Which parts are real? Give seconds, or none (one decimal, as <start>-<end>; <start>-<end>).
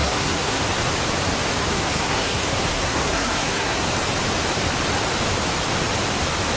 0.6-1.7; 3.9-6.6